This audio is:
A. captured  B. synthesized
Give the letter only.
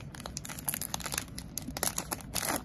A